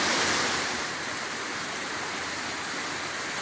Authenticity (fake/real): real